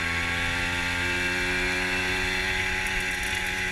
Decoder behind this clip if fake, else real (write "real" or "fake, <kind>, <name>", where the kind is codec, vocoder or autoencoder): real